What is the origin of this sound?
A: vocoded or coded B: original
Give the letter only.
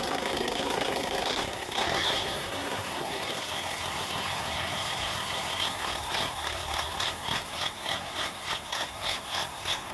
A